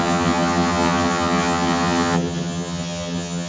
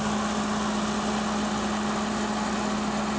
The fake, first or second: first